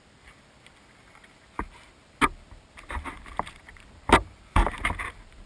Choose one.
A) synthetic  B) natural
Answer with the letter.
B